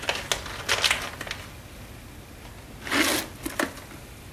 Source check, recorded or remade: recorded